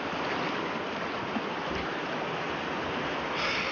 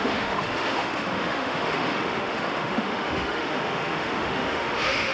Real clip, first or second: first